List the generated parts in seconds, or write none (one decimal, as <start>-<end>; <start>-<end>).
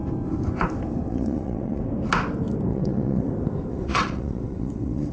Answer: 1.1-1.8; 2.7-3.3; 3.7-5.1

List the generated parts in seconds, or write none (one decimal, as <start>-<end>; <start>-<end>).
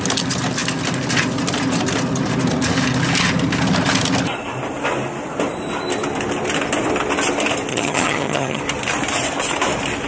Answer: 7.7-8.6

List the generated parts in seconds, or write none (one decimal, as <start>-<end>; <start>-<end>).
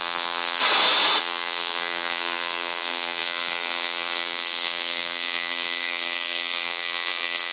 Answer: 0.0-0.6; 1.2-7.5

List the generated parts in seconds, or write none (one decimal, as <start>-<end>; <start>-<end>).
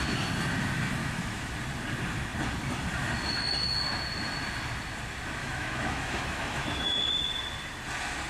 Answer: 1.0-1.5; 5.4-7.0